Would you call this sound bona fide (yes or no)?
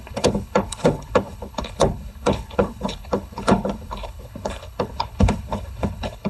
no